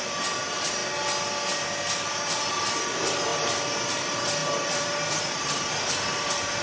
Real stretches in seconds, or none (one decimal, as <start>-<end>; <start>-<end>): 0.8-2.5; 3.3-3.9